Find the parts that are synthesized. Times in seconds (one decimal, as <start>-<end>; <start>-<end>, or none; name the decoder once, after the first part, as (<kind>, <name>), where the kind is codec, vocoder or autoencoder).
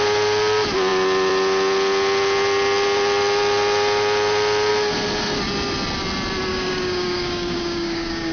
6.5-8.3 (codec, DAC)